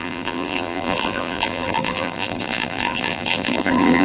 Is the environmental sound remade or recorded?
remade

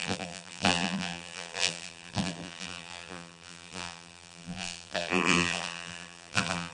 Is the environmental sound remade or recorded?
remade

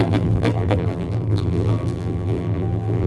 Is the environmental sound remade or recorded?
remade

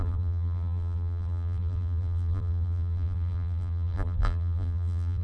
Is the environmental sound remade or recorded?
remade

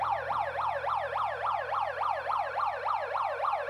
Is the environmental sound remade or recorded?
recorded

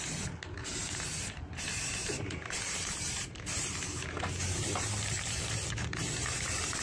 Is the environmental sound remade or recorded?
remade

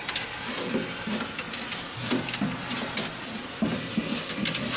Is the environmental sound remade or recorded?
remade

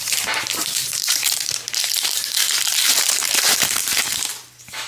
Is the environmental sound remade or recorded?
remade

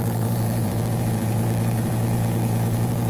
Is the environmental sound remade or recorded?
remade